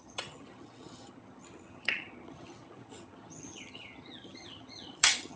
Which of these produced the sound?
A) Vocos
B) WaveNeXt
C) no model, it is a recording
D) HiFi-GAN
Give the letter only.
D